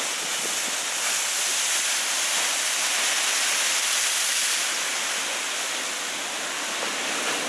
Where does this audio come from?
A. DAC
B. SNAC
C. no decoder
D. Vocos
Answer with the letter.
C